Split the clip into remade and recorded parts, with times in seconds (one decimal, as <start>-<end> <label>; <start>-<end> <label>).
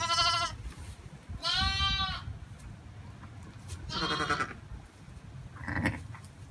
0.0-6.5 recorded